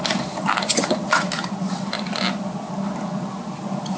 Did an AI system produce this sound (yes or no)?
no